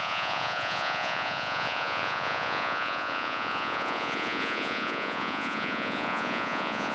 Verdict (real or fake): fake